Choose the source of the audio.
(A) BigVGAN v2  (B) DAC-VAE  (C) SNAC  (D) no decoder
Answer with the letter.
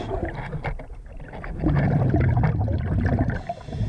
D